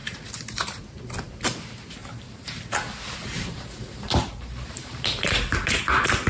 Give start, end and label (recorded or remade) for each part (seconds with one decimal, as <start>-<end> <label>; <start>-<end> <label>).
0.0-0.8 remade; 0.8-2.0 recorded; 2.0-5.8 remade; 5.8-6.3 recorded